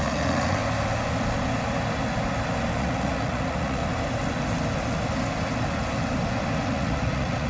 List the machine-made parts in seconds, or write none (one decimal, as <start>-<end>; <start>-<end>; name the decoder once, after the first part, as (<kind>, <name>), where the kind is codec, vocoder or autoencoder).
0.0-0.6 (vocoder, Vocos); 2.8-3.8; 6.6-7.5